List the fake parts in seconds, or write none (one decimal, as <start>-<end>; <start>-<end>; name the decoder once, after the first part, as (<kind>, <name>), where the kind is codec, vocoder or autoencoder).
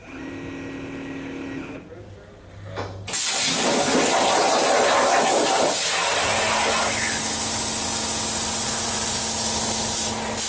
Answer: 8.6-9.2 (vocoder, Vocos)